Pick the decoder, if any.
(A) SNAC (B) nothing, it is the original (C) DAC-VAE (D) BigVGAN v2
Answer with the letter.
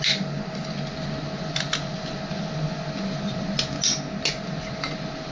B